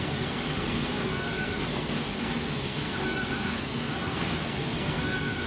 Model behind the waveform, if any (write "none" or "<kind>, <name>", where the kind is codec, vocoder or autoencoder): codec, SNAC